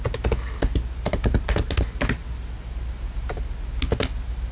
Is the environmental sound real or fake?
real